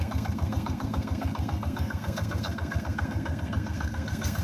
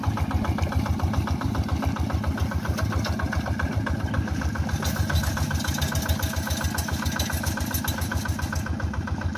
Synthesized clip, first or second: first